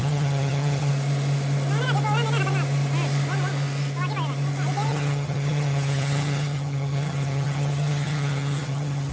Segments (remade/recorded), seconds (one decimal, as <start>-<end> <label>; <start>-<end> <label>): 0.0-0.9 remade; 0.9-4.9 recorded; 4.9-9.1 remade